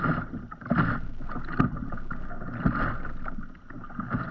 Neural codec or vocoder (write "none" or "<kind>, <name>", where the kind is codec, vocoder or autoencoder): none